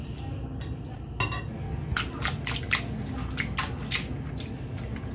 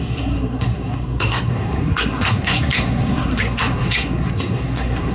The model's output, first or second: second